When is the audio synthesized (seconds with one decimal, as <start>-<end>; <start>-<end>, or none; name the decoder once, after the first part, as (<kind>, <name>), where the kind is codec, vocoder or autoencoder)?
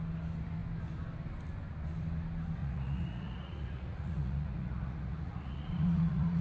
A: 2.6-6.4 (vocoder, Vocos)